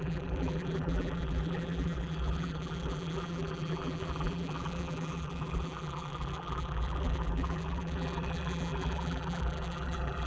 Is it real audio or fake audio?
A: fake